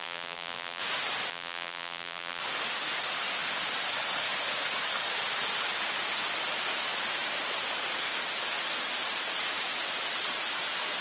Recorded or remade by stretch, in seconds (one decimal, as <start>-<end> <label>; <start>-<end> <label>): 0.0-0.8 remade; 0.8-1.3 recorded; 1.3-2.4 remade; 2.4-11.0 recorded